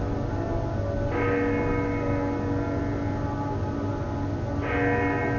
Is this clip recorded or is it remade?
recorded